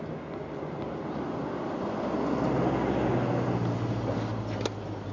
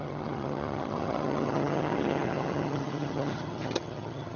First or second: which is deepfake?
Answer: second